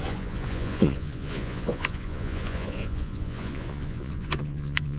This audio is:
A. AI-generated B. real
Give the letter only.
A